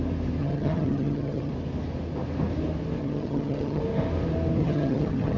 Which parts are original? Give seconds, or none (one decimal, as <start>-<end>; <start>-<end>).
0.0-0.4; 1.5-3.0; 3.8-4.6

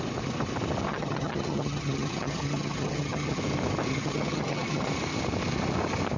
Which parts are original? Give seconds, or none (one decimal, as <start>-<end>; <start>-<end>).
0.0-0.9; 3.4-3.9; 4.9-6.2